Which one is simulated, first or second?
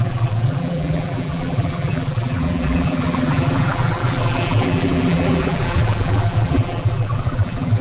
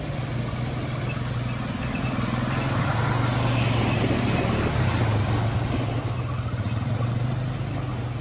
first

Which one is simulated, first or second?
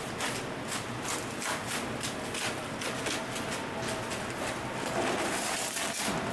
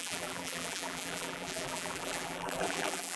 second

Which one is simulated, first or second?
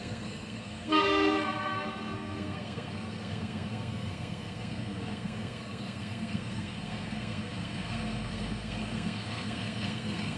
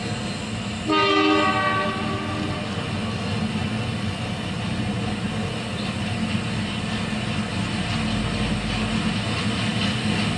first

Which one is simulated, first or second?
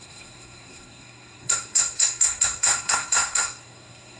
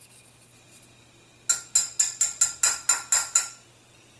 first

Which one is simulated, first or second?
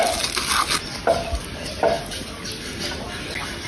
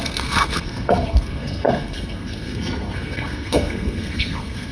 second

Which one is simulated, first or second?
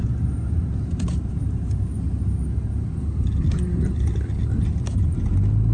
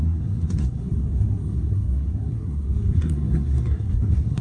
second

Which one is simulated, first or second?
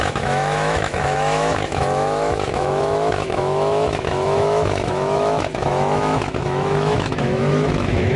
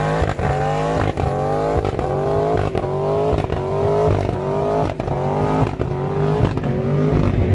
first